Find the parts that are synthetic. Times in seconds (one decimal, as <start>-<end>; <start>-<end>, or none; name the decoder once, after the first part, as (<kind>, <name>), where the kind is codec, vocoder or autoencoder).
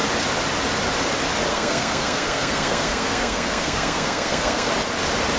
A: 1.5-4.7 (codec, SNAC)